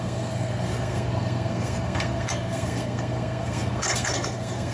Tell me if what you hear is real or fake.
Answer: fake